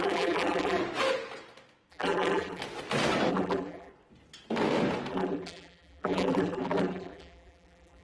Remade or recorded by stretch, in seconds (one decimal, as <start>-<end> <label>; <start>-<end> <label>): 0.0-0.8 remade; 0.8-1.9 recorded; 1.9-2.6 remade; 2.6-3.3 recorded; 3.3-3.9 remade; 3.9-5.1 recorded; 5.1-8.0 remade

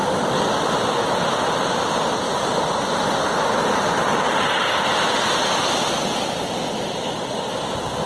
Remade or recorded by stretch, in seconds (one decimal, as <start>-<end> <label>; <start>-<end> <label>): 0.0-0.7 remade; 0.7-8.1 recorded

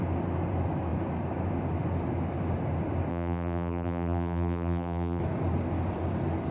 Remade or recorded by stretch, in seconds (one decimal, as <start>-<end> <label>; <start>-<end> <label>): 0.0-3.1 recorded; 3.1-5.2 remade; 5.2-6.5 recorded

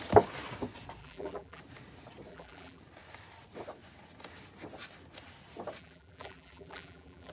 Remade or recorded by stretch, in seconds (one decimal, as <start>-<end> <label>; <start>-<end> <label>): 0.0-1.0 recorded; 1.0-1.6 remade; 1.6-2.3 recorded; 2.3-2.8 remade; 2.8-5.8 recorded; 5.8-7.3 remade

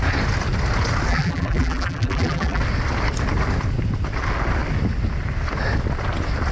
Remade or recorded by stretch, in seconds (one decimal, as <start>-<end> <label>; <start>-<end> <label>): 0.0-1.1 recorded; 1.1-2.6 remade; 2.6-6.5 recorded